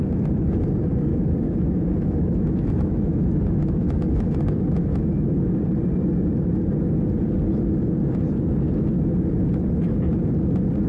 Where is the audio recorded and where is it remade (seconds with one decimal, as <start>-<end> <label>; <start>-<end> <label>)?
0.0-1.1 recorded; 1.1-5.6 remade; 5.6-10.9 recorded